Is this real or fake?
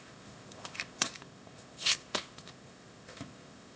fake